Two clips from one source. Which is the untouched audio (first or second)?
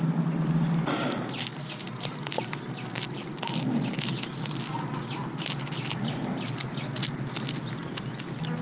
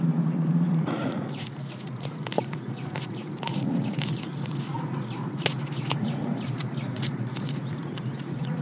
first